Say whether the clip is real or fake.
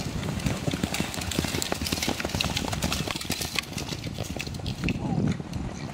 real